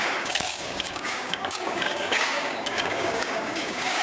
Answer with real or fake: fake